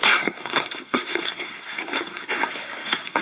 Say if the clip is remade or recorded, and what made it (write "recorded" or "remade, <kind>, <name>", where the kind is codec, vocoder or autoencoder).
remade, codec, SNAC